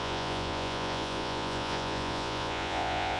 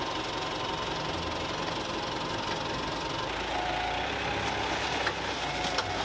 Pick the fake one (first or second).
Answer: first